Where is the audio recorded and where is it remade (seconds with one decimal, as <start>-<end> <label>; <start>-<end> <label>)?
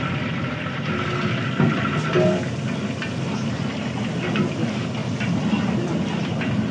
0.0-6.7 recorded